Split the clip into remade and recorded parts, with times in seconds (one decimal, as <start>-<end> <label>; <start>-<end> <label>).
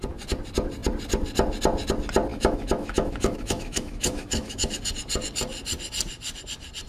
0.0-2.3 recorded; 2.3-4.8 remade; 4.8-6.9 recorded